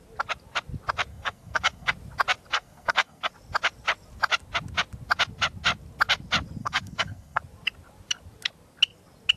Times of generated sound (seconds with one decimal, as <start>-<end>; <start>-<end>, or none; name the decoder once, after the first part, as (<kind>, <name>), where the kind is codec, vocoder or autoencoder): 1.1-1.9 (codec, SNAC); 2.5-3.3; 6.6-7.4